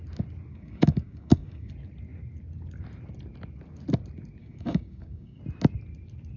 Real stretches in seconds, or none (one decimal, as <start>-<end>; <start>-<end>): 0.0-0.5; 1.7-4.4; 5.4-6.4